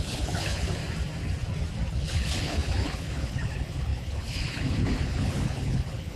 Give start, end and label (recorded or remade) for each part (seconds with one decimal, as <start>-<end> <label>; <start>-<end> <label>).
0.0-0.8 remade; 0.8-1.9 recorded; 1.9-6.2 remade